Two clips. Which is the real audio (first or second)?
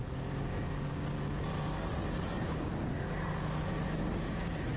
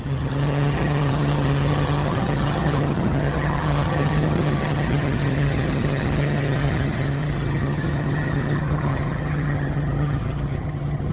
first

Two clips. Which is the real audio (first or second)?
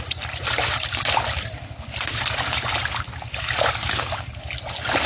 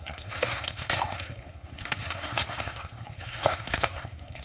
first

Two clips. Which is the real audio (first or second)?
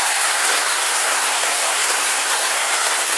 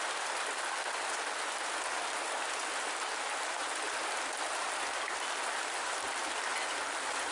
second